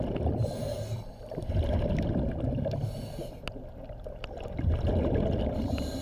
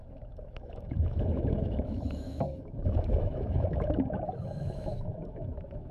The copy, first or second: second